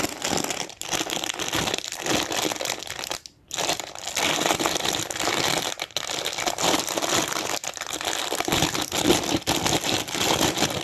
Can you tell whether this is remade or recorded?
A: recorded